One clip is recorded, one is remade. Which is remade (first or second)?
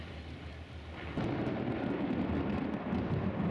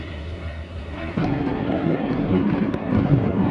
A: second